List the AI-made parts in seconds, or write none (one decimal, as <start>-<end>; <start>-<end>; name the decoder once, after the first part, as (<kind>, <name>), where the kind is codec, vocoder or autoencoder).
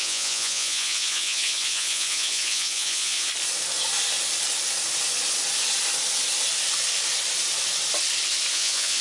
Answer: 0.0-3.3 (vocoder, Vocos); 8.5-9.0